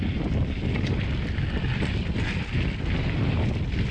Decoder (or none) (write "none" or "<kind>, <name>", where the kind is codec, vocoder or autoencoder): none